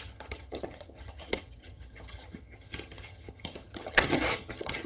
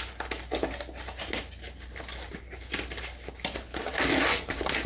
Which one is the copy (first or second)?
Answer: first